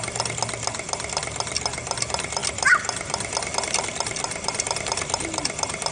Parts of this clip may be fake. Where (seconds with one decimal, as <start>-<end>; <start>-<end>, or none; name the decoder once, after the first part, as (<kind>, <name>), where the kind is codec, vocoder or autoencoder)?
none